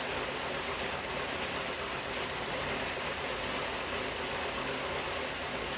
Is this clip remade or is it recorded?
recorded